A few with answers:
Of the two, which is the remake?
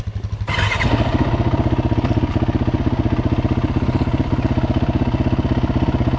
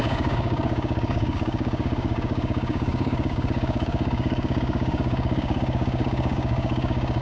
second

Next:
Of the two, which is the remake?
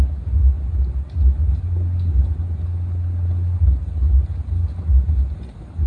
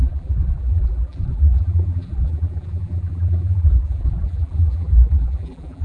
second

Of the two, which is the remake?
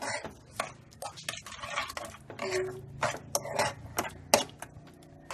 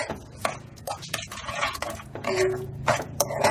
second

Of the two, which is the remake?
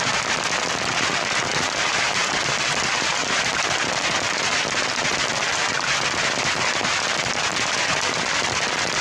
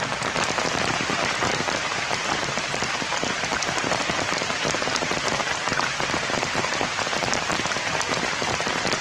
second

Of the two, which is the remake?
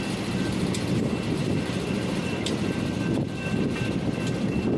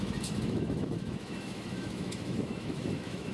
second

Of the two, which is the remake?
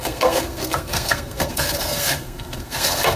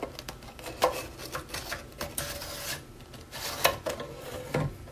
first